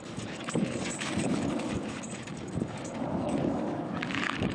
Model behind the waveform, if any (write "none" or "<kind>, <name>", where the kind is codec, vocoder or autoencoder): codec, DAC